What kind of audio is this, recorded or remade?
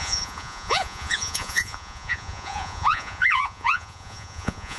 remade